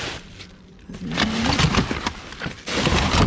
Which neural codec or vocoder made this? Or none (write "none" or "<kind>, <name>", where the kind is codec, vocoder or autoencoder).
none